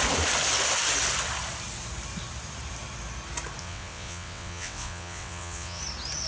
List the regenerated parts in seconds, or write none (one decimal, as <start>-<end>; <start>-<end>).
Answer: 3.6-5.8

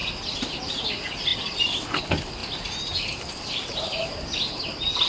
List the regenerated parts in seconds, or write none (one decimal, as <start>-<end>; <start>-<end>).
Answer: none

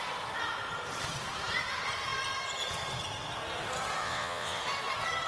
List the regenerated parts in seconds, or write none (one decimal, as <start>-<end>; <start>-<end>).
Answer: 4.0-4.6

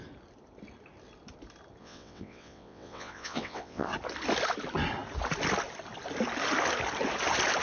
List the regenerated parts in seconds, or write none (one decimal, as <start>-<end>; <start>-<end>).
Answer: 1.8-3.9